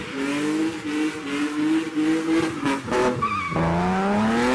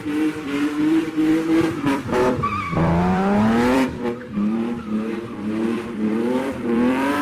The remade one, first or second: second